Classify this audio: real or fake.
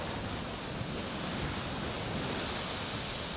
real